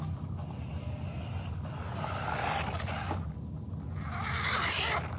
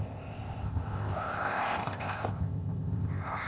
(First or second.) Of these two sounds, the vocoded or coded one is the second